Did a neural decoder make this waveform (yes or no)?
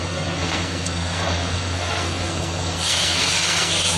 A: yes